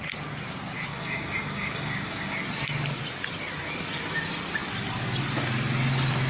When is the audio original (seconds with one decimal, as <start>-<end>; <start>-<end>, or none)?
0.0-0.9; 2.4-6.3